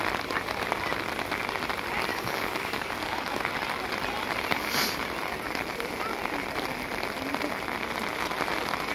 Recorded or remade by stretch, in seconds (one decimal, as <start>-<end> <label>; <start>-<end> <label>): 0.0-2.1 recorded; 2.1-3.4 remade; 3.4-8.9 recorded